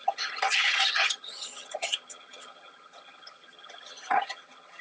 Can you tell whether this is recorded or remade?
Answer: remade